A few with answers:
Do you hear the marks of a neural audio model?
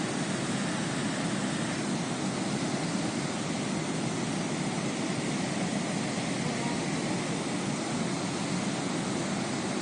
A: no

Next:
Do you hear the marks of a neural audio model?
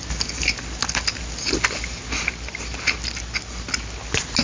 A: no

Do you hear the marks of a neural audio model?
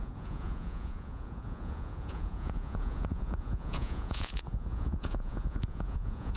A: yes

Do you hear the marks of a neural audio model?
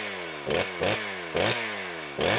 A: no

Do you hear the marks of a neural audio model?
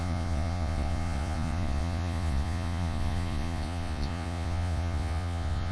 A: yes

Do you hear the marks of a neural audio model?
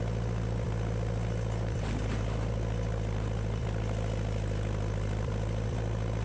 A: no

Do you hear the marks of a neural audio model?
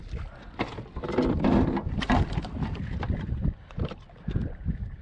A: no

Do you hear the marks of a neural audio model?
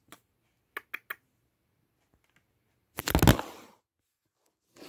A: no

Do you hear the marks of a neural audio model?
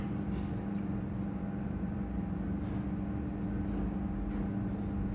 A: no